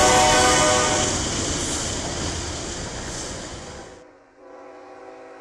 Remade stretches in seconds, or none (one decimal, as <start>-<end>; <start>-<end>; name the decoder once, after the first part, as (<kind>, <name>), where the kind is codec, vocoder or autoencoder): 2.9-5.0 (vocoder, Vocos)

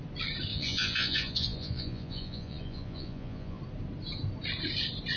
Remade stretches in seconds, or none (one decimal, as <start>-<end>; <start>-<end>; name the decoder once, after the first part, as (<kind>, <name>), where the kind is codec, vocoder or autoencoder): 0.5-3.6 (vocoder, Vocos)

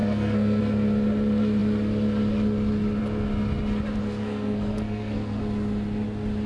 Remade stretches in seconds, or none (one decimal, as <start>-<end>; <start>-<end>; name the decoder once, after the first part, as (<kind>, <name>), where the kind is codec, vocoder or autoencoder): 0.0-0.6 (codec, SNAC); 4.0-5.4

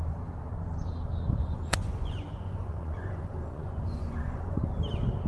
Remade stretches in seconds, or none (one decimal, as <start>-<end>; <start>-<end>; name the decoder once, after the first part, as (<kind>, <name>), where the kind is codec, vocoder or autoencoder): 1.4-4.6 (vocoder, Vocos)

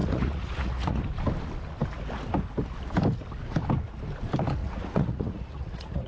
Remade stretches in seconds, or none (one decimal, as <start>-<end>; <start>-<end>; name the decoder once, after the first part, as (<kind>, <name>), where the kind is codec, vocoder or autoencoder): 0.0-1.0 (vocoder, Vocos); 4.6-6.1

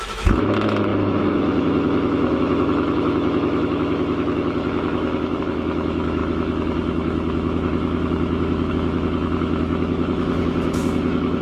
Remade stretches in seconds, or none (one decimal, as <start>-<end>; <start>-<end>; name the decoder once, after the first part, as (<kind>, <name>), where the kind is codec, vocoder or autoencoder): 0.0-11.4 (autoencoder, DAC-VAE)